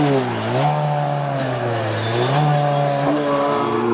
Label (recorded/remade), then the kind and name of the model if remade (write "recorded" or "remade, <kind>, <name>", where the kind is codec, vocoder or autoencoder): recorded